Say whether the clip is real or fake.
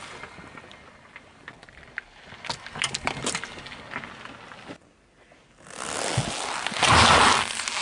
real